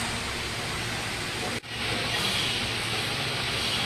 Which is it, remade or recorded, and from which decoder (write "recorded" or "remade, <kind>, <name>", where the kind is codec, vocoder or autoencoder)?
recorded